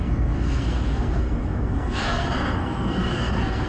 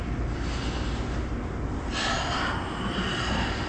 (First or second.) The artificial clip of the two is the first